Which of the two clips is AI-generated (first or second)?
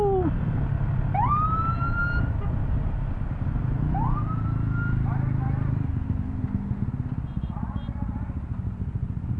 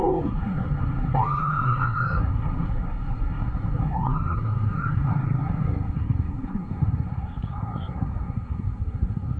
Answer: second